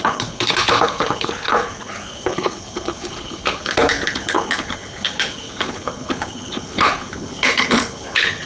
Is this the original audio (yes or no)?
no